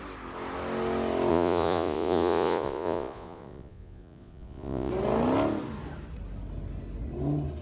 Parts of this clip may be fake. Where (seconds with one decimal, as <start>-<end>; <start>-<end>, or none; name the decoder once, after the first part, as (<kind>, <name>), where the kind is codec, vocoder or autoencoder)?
1.3-4.9 (vocoder, Vocos)